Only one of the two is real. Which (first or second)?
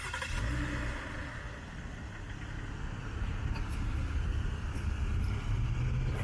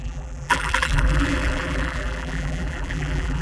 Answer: first